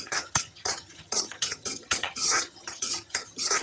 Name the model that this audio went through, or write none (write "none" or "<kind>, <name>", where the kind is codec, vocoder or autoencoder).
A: vocoder, HiFi-GAN